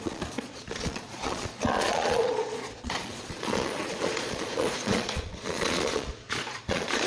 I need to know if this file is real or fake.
fake